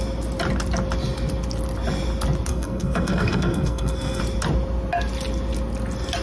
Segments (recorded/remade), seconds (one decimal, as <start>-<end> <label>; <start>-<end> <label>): 0.0-2.5 recorded; 2.5-4.2 remade; 4.2-6.2 recorded